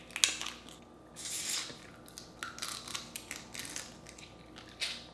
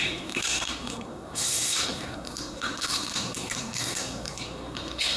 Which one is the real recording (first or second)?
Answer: first